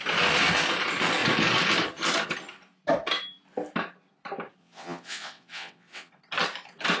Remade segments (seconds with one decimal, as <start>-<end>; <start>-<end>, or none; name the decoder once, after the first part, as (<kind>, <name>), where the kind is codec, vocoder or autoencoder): 4.6-6.1 (vocoder, WaveNeXt)